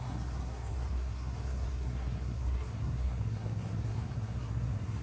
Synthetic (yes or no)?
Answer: yes